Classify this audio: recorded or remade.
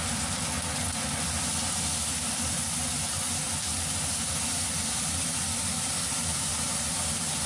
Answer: recorded